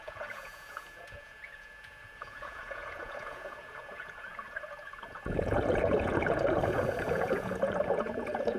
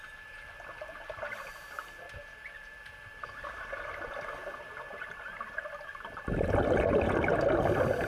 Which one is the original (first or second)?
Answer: second